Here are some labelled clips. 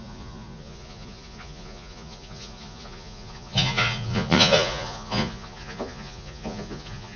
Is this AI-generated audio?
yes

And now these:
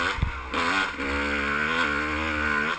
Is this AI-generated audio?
no